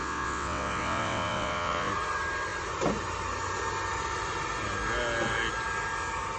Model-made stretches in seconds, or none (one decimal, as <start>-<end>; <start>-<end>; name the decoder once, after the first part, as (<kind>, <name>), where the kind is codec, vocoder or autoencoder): 0.0-1.9 (vocoder, WaveNeXt)